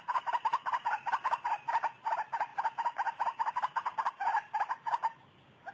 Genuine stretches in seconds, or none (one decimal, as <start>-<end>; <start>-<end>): 0.0-5.7